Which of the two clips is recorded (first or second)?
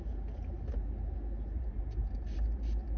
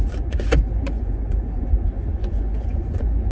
first